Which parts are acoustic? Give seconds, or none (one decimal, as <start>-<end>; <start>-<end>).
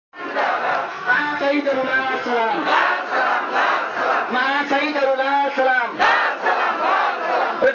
0.0-0.8; 1.6-2.2; 3.0-7.7